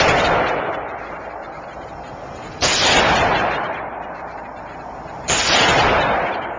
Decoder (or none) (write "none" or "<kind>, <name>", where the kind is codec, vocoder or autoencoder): vocoder, BigVGAN v2